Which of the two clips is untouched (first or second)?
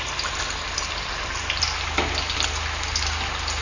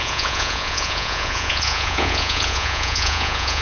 first